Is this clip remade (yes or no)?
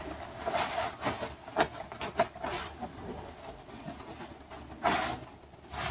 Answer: no